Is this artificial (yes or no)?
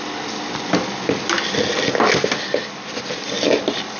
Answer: no